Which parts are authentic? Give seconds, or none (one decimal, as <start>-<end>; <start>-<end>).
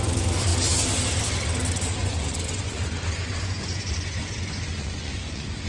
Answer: 0.0-2.0